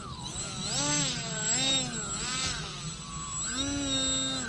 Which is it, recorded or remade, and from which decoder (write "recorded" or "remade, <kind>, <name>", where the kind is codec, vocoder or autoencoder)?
recorded